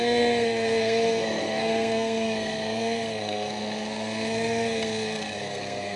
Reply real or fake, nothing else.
fake